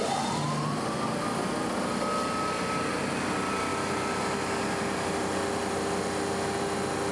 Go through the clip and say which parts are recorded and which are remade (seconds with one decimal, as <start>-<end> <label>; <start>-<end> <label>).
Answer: 0.0-7.1 recorded